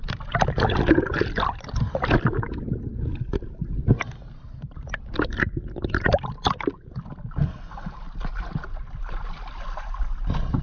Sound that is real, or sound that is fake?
real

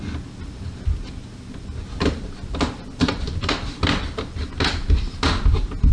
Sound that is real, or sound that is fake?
real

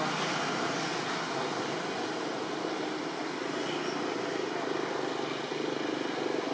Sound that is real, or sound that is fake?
real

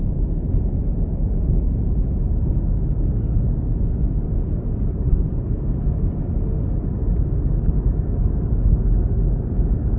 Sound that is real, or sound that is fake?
real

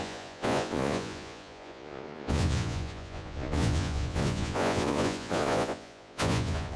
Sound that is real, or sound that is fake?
fake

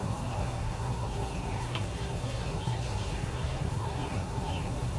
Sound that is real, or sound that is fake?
fake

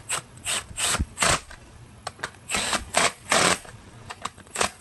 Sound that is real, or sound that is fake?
fake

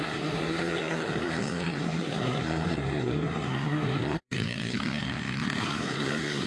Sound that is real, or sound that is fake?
fake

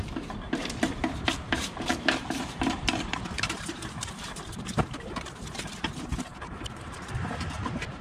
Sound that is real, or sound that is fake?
fake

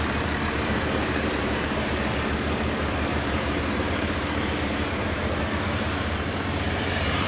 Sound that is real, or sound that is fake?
fake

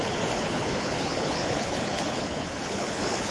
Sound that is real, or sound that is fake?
fake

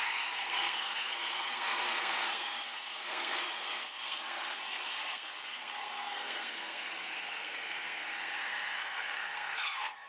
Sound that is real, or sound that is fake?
fake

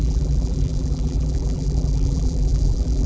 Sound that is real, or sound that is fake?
fake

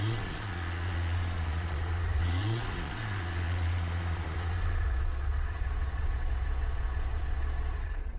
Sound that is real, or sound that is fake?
fake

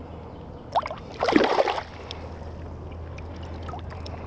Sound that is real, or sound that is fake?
real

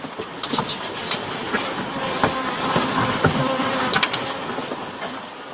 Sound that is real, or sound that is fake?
real